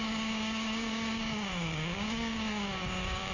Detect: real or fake fake